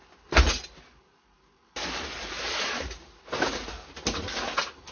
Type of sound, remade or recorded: recorded